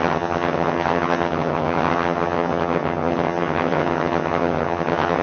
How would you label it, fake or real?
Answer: fake